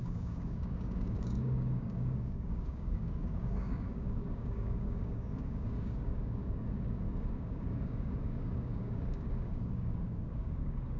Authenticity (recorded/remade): remade